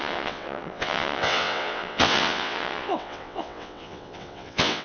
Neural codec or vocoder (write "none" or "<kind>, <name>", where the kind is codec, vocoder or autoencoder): vocoder, WaveNeXt